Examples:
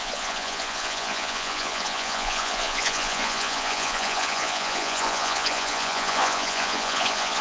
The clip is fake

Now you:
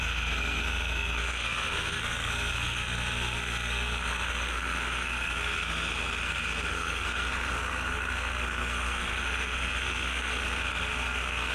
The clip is fake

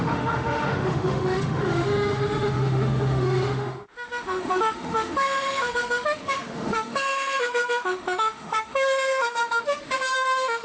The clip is fake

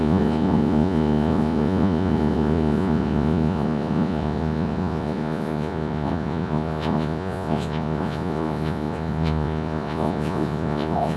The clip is fake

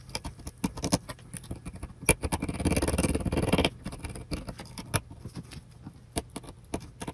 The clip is real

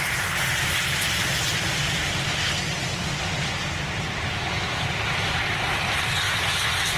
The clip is real